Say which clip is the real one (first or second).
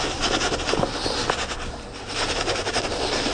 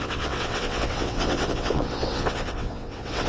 first